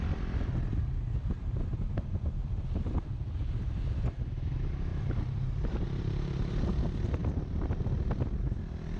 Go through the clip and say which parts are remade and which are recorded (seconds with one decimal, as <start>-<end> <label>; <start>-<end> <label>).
0.0-4.9 recorded; 4.9-6.8 remade; 6.8-7.2 recorded; 7.2-7.8 remade; 7.8-9.0 recorded